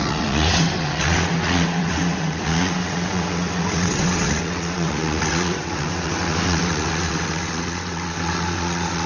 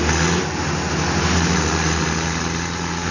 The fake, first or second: first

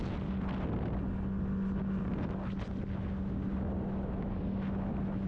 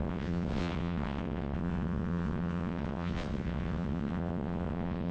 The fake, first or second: second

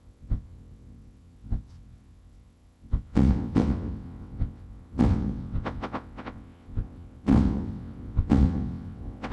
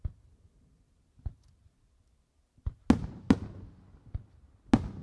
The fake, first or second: first